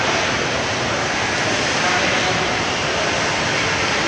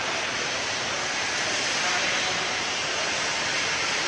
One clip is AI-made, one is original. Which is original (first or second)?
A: first